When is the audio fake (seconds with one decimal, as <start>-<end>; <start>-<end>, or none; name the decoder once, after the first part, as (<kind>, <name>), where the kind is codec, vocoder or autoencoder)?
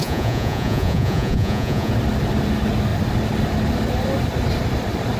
0.0-1.9 (vocoder, Vocos)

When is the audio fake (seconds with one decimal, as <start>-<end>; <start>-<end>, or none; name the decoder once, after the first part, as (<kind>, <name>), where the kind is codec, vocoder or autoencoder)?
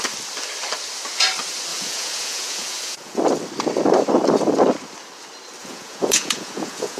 1.7-3.2 (vocoder, Vocos); 5.6-7.0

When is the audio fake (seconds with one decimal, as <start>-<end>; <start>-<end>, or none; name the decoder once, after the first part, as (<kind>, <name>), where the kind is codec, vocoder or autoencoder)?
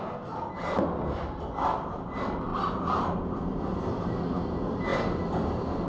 none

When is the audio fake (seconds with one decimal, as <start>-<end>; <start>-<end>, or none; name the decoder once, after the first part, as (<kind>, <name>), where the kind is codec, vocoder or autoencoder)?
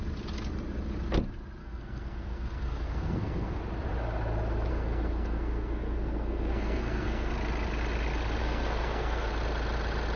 1.6-3.6 (codec, SNAC); 4.7-7.3; 8.4-9.3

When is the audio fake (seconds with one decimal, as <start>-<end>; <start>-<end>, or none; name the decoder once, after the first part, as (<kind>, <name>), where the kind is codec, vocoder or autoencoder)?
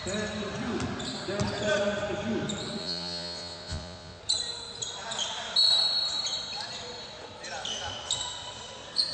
2.8-4.2 (vocoder, Vocos)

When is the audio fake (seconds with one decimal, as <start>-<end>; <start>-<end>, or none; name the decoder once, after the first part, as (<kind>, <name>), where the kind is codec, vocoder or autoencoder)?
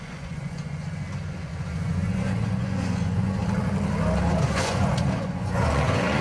0.0-3.4 (vocoder, Vocos); 4.2-6.2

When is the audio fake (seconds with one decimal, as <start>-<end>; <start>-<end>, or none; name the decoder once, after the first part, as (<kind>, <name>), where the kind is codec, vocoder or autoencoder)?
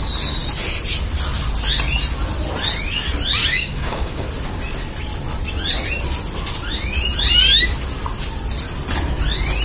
3.4-4.3 (codec, DAC)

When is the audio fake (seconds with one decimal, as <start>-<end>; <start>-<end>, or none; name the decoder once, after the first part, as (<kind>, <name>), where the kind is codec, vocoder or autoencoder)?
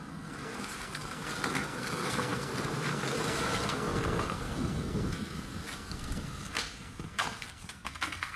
0.0-8.4 (codec, SNAC)